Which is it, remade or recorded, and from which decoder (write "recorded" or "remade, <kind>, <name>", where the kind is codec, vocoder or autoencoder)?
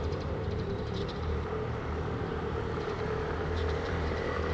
remade, vocoder, BigVGAN v2